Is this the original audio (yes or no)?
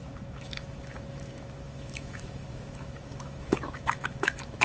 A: no